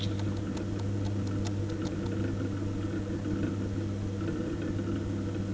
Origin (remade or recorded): recorded